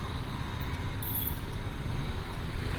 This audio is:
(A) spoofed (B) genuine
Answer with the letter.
B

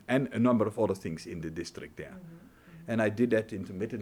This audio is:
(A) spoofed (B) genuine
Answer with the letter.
B